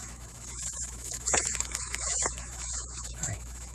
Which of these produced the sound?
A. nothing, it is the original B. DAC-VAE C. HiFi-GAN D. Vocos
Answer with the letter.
B